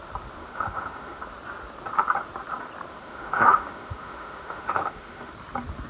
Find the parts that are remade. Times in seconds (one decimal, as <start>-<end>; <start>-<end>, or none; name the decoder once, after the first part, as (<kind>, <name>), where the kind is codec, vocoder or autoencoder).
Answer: 0.4-1.2 (autoencoder, DAC-VAE); 2.9-5.3